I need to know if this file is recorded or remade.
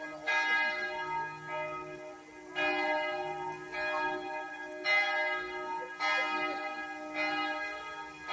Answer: recorded